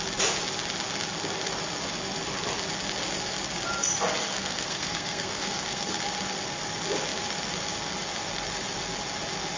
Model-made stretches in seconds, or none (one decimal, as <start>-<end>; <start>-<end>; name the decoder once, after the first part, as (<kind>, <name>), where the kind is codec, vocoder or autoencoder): 4.2-6.0 (codec, SNAC)